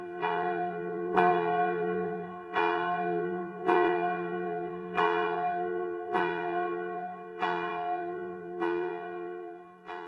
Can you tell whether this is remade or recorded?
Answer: remade